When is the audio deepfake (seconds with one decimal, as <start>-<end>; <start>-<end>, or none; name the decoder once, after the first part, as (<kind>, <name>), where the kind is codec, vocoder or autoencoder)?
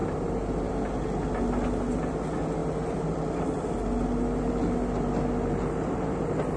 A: 0.0-0.7 (vocoder, BigVGAN v2)